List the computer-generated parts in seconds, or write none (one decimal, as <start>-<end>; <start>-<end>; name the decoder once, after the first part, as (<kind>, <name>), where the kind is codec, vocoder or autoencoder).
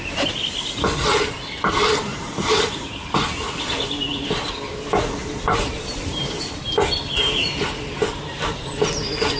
2.1-3.3 (vocoder, BigVGAN v2); 5.2-6.5